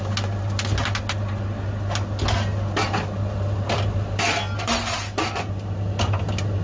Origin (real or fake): real